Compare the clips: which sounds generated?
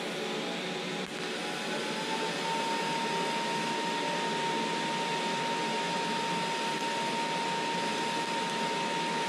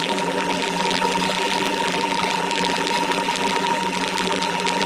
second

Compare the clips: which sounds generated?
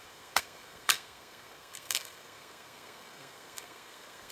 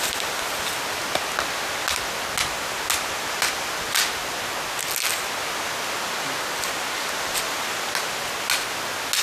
first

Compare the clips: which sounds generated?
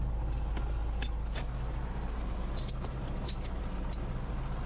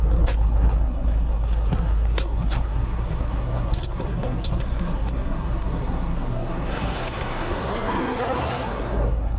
second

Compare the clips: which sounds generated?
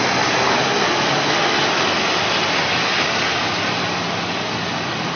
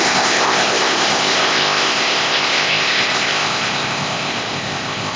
second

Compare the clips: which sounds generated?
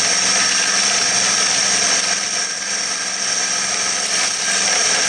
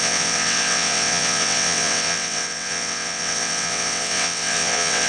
second